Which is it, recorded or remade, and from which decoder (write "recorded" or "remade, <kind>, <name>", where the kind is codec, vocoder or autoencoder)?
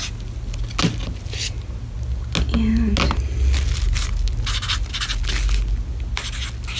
recorded